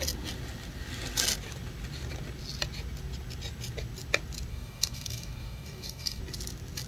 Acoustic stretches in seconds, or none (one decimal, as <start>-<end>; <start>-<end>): 0.0-4.5; 6.2-6.9